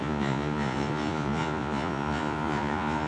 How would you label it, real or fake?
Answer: fake